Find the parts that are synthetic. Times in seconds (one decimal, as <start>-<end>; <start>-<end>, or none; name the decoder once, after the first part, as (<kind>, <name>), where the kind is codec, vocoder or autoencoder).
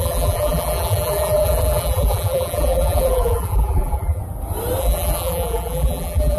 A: 0.0-4.2 (vocoder, BigVGAN v2); 4.8-6.4